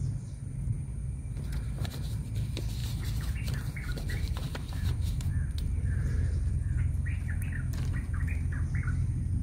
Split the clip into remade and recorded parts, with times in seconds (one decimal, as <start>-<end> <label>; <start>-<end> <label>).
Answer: 0.0-2.8 recorded; 2.8-7.4 remade; 7.4-9.4 recorded